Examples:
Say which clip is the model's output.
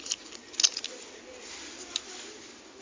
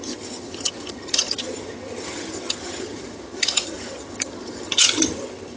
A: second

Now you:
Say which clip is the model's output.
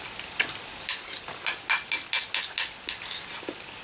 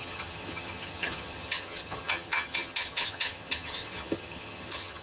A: second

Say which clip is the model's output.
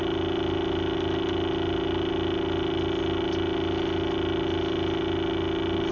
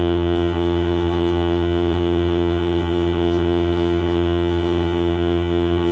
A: second